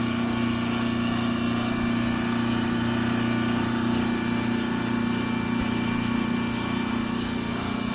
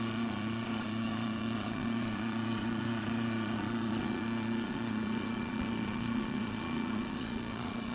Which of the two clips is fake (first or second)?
second